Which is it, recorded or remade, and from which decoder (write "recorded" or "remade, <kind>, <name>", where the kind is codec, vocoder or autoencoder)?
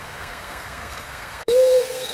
remade, codec, SNAC